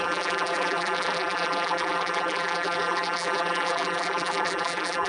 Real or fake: fake